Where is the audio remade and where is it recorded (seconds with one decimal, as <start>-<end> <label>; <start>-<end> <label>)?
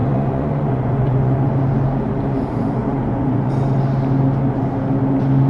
0.0-1.5 remade; 1.5-2.8 recorded; 2.8-3.5 remade; 3.5-5.5 recorded